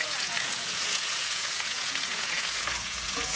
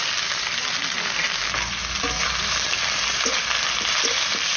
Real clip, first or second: second